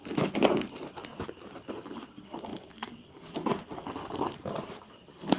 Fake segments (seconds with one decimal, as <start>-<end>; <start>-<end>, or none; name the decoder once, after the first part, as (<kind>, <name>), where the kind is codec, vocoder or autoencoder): 1.1-1.7 (vocoder, BigVGAN v2); 2.5-5.4